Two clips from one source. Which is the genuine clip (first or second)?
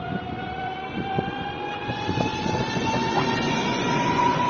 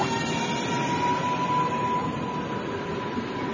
second